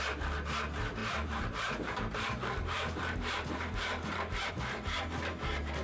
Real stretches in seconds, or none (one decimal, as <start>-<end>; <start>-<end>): 0.0-1.0; 4.5-5.8